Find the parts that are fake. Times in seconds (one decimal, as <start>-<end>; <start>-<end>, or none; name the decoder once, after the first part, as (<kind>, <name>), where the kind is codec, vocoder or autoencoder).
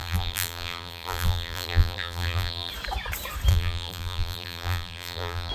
0.0-2.7 (vocoder, BigVGAN v2); 3.5-5.5